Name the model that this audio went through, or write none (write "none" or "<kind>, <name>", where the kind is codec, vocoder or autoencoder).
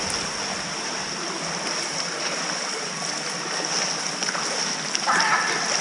none